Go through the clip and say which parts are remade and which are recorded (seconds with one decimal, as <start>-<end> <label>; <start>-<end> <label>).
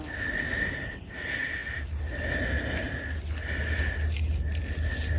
0.0-5.2 recorded